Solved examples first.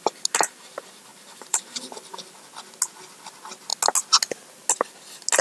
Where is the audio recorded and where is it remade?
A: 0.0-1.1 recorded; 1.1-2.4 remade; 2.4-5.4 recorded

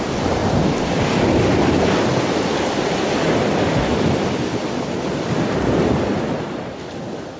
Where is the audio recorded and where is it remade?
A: 0.0-7.4 recorded

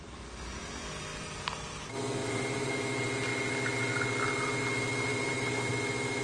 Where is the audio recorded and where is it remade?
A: 0.0-1.1 recorded; 1.1-1.8 remade; 1.8-2.2 recorded; 2.2-2.7 remade; 2.7-5.1 recorded; 5.1-5.7 remade; 5.7-6.2 recorded

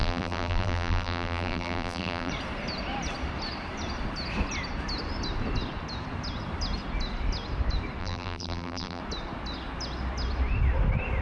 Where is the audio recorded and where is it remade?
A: 0.0-2.3 remade; 2.3-8.0 recorded; 8.0-9.0 remade; 9.0-11.2 recorded

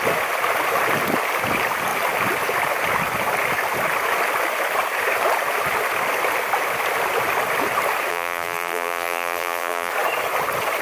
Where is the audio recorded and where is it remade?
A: 0.0-8.1 recorded; 8.1-9.9 remade; 9.9-10.8 recorded